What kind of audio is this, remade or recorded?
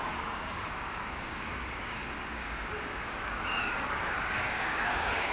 remade